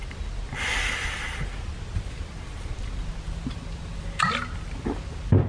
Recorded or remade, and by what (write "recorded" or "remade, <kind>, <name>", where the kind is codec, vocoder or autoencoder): recorded